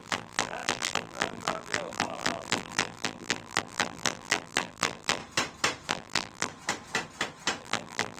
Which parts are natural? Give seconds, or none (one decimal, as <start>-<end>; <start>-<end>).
5.2-5.9; 6.5-7.6